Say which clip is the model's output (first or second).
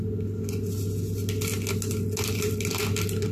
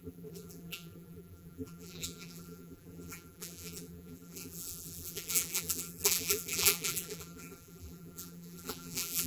second